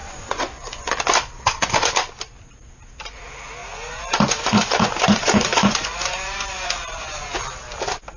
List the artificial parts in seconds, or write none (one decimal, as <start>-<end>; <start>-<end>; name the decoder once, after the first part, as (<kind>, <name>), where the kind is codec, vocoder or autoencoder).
0.0-0.9 (vocoder, Vocos); 3.6-7.3